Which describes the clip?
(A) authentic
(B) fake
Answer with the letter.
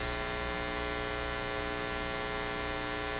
A